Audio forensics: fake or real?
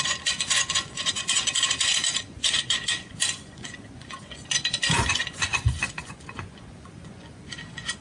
fake